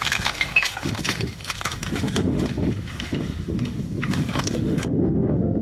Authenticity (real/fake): fake